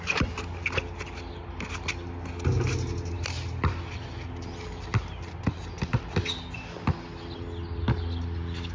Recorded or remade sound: recorded